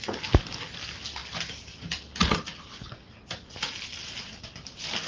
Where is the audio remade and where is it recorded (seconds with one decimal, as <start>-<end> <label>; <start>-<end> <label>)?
0.0-5.1 recorded